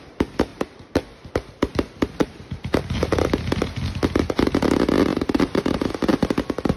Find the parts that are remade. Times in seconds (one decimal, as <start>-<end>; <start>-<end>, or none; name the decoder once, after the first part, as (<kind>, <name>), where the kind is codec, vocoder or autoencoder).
0.5-3.2 (vocoder, BigVGAN v2); 5.1-5.9